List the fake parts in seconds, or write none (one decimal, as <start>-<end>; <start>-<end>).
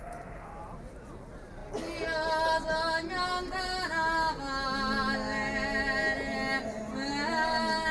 none